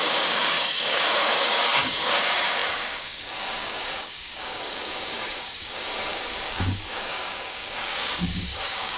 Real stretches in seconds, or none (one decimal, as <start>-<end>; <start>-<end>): none